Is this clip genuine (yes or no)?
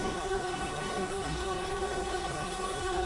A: no